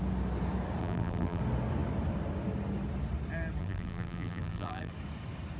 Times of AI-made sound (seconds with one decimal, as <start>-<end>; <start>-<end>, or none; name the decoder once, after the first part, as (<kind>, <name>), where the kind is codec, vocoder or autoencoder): 0.8-1.4 (vocoder, BigVGAN v2); 3.6-4.9